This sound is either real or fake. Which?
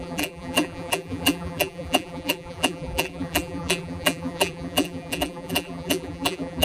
fake